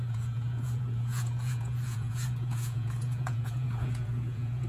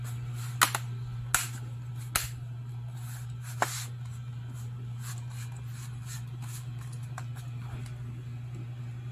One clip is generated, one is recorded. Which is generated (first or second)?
first